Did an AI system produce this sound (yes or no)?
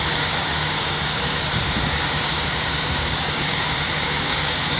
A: yes